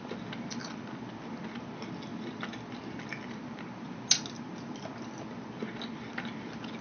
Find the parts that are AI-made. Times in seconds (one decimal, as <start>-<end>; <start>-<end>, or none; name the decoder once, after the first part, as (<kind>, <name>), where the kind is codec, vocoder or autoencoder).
none